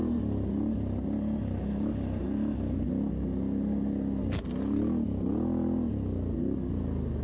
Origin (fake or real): real